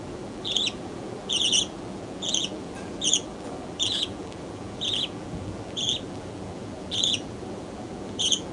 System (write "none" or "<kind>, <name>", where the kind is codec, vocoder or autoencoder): vocoder, BigVGAN v2